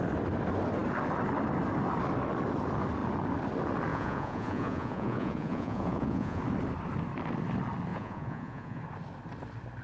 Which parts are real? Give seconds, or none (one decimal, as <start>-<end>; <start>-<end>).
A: 0.0-3.9; 6.4-7.9; 8.8-9.8